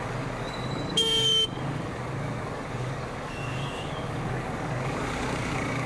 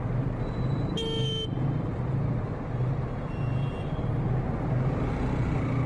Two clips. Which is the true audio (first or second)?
second